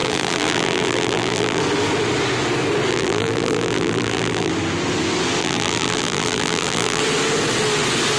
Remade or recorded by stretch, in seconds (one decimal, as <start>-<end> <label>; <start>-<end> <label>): 0.0-1.6 remade; 1.6-2.9 recorded; 2.9-4.5 remade; 4.5-5.4 recorded; 5.4-7.0 remade; 7.0-8.2 recorded